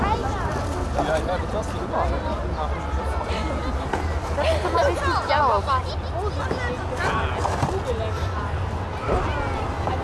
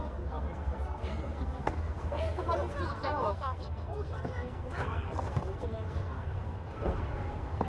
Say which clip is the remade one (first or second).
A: second